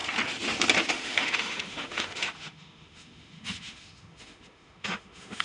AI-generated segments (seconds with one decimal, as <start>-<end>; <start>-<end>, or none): 0.9-5.4